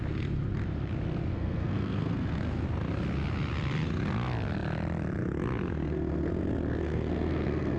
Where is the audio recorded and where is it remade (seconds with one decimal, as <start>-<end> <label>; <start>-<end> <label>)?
0.0-1.3 recorded; 1.3-2.4 remade; 2.4-5.7 recorded; 5.7-6.3 remade; 6.3-6.8 recorded; 6.8-7.8 remade